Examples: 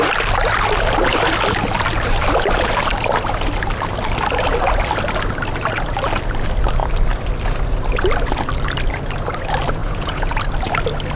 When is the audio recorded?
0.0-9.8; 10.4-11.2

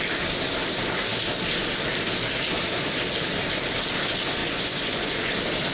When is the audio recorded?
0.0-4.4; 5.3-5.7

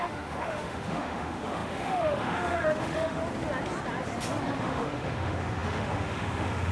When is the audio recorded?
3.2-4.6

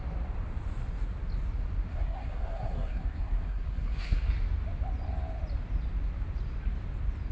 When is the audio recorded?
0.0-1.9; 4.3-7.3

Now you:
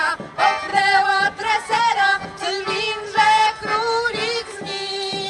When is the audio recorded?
0.0-0.7; 2.4-5.3